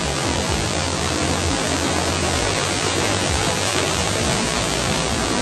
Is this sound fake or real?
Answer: fake